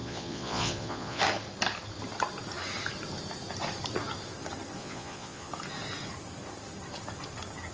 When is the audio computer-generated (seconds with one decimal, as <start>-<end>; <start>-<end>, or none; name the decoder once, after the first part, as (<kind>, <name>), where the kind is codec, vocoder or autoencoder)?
0.0-1.2 (vocoder, Vocos); 4.8-5.5